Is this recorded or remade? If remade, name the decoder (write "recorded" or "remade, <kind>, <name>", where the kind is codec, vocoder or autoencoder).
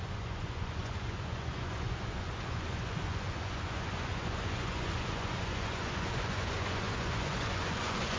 remade, vocoder, Vocos